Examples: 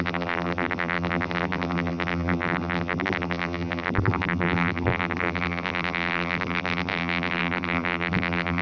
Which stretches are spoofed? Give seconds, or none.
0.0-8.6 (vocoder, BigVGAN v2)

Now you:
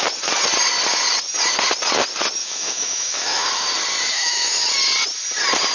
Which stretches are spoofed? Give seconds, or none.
2.4-3.5 (autoencoder, DAC-VAE); 4.1-4.7

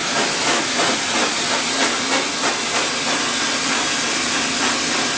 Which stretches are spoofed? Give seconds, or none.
0.0-0.7 (autoencoder, DAC-VAE)

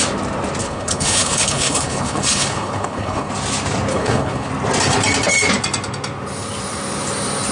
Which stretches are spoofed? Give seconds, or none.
0.6-3.3 (codec, HILCodec); 3.9-4.5

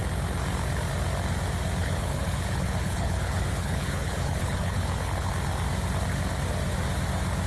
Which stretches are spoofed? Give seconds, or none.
1.8-5.3 (codec, HILCodec)

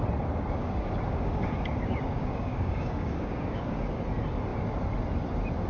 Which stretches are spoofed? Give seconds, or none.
0.6-4.0 (codec, DAC)

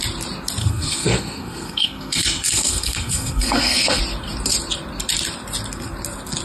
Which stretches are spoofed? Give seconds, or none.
0.6-4.0 (codec, SNAC)

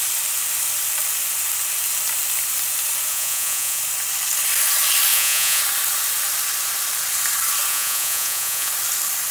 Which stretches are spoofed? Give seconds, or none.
3.1-3.8 (vocoder, Vocos); 5.1-5.6; 7.7-8.7